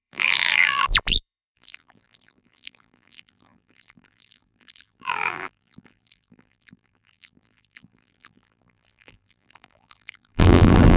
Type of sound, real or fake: fake